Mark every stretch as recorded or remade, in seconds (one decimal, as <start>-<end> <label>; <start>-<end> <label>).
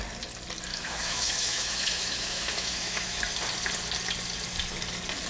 0.0-0.7 recorded; 0.7-3.2 remade; 3.2-5.3 recorded